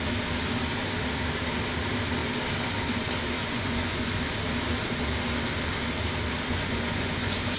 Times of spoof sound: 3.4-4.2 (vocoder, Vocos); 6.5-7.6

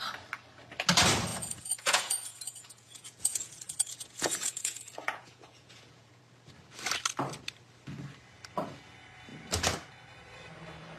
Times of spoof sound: 1.3-6.2 (vocoder, Vocos)